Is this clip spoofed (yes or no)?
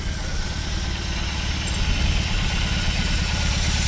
no